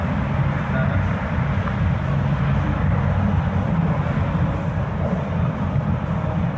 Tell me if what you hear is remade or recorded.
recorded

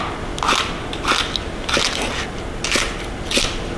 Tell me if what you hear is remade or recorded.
recorded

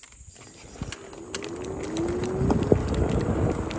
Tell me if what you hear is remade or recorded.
recorded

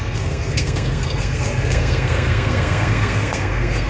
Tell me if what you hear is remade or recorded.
remade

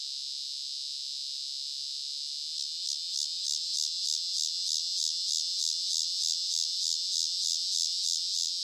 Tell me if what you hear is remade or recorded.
recorded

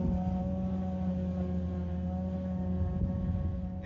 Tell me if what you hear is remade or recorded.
recorded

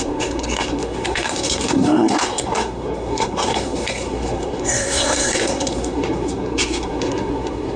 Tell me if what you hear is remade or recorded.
remade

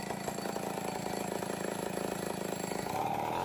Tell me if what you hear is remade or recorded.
recorded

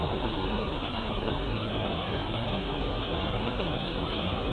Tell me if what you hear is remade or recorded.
remade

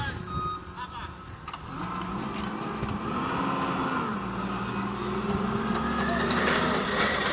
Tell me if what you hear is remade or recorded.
recorded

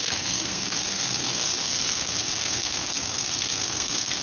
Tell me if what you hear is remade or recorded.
remade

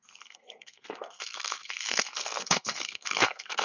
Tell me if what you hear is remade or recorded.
remade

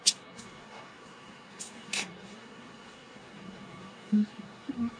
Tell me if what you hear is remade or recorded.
remade